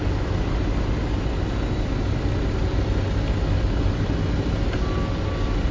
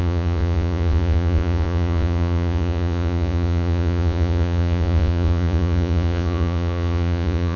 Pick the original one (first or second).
first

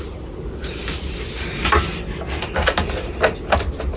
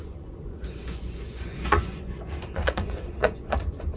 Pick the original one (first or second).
first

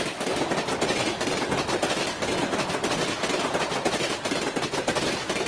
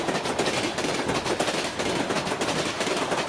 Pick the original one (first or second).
first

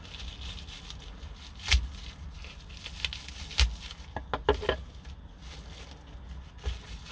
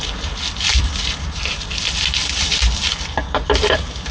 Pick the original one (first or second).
first